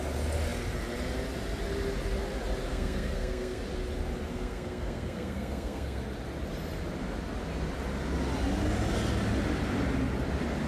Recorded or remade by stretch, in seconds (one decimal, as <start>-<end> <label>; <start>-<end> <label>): 0.0-2.7 recorded; 2.7-3.6 remade; 3.6-4.3 recorded; 4.3-6.0 remade; 6.0-10.7 recorded